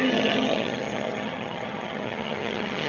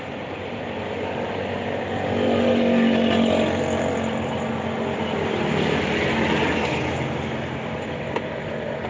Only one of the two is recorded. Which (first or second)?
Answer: second